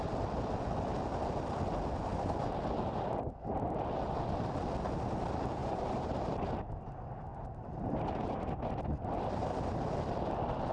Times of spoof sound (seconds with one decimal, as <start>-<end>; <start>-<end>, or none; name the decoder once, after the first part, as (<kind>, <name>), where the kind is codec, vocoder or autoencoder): 5.6-6.1 (vocoder, BigVGAN v2); 7.3-8.4